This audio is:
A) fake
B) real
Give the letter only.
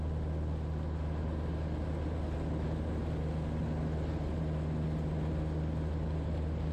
B